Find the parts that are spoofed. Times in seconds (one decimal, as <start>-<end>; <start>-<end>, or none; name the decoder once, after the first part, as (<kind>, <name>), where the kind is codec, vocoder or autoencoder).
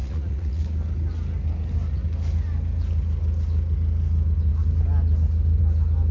0.0-0.6 (vocoder, Vocos)